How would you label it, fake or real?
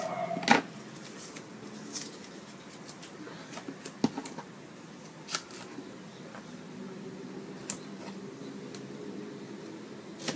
real